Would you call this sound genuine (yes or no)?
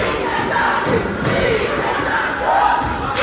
yes